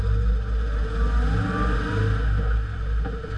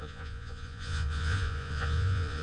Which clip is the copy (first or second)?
second